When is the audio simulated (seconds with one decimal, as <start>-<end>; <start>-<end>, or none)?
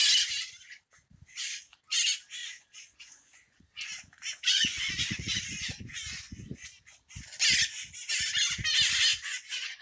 2.4-6.8; 9.1-9.8